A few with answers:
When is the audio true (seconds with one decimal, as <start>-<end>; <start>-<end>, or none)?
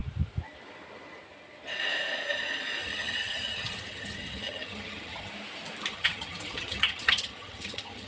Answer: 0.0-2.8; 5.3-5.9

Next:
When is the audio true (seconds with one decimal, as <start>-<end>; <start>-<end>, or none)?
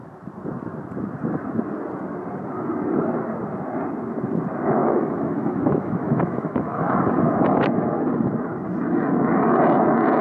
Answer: 0.0-4.8; 8.0-10.2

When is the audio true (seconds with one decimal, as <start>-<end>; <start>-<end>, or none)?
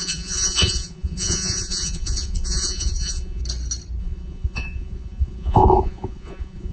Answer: 3.4-4.0